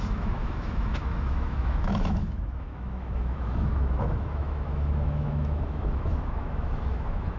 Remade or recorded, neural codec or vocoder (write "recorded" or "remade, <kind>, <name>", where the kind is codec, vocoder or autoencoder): remade, autoencoder, DAC-VAE